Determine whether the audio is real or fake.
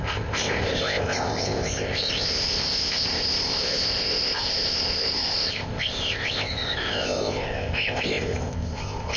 fake